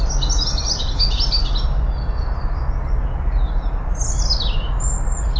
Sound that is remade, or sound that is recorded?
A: recorded